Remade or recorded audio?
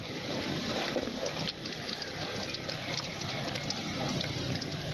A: recorded